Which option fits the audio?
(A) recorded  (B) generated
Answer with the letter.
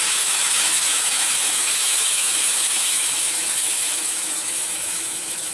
B